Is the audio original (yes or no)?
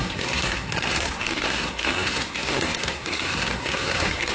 no